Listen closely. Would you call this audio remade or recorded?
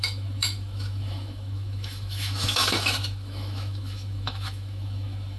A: remade